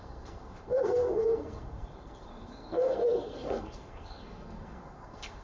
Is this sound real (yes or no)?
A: no